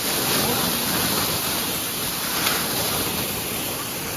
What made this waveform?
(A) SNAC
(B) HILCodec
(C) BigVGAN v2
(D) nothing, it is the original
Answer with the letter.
D